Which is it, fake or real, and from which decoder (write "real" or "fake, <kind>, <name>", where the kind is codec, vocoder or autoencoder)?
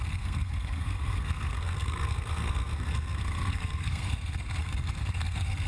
fake, codec, SNAC